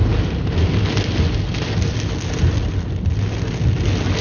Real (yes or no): yes